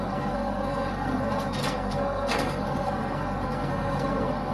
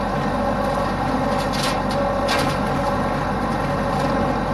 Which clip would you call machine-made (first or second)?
first